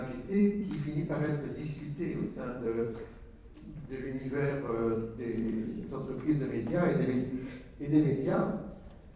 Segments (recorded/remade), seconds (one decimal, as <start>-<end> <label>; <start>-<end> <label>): 0.0-9.2 remade